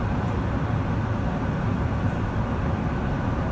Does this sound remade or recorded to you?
recorded